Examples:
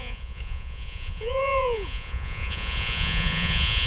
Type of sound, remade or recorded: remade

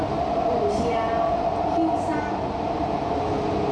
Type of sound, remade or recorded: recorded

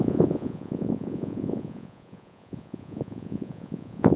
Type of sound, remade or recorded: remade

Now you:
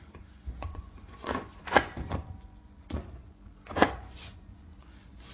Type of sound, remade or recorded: remade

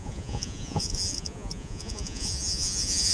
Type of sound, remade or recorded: remade